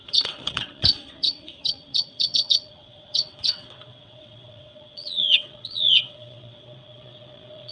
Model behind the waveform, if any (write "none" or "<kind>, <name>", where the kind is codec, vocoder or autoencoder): vocoder, WaveNeXt